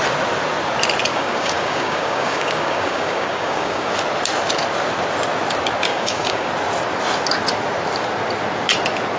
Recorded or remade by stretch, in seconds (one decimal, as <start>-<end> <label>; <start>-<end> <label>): 0.0-1.1 recorded; 1.1-3.9 remade; 3.9-5.9 recorded; 5.9-6.5 remade; 6.5-9.2 recorded